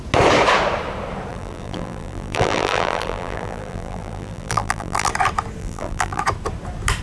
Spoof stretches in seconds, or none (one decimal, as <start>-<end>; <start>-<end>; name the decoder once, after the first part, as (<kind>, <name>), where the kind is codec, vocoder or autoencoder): 1.3-5.1 (vocoder, BigVGAN v2); 5.6-6.2

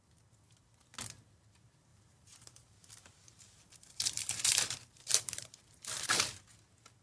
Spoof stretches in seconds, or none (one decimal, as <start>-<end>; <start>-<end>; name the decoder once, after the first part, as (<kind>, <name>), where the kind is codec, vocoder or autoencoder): 1.9-6.1 (vocoder, BigVGAN v2)

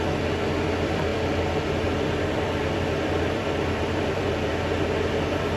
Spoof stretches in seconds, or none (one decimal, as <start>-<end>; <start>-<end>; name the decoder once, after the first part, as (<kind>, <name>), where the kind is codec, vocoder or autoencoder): 1.1-4.5 (vocoder, BigVGAN v2)

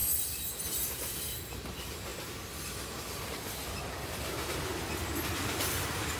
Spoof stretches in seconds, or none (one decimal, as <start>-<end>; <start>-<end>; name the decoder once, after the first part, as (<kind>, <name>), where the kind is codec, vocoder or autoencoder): 3.6-4.7 (vocoder, BigVGAN v2)

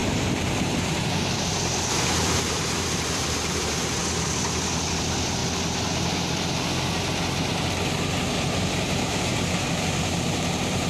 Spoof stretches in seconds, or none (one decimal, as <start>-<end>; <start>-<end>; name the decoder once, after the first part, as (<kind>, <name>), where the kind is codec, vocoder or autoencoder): 0.0-4.0 (vocoder, BigVGAN v2); 4.9-5.4; 8.1-10.9

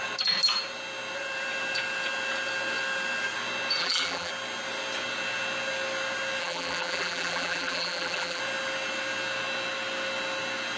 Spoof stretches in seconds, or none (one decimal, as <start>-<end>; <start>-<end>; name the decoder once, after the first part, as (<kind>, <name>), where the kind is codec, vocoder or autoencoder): 3.8-4.3 (vocoder, BigVGAN v2); 6.4-8.4

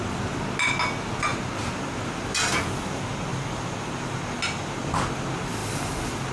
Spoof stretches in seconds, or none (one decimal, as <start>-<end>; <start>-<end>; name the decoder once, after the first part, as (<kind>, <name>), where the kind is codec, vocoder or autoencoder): none